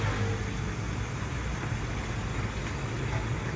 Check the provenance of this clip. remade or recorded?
recorded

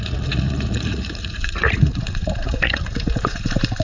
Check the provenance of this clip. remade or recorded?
remade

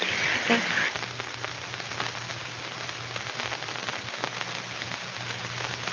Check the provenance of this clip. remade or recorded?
recorded